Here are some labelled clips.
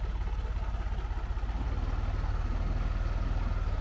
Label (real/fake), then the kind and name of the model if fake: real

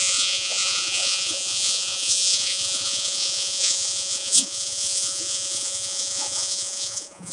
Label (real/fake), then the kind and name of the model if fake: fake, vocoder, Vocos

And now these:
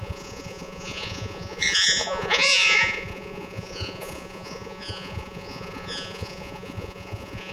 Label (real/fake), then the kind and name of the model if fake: fake, vocoder, Vocos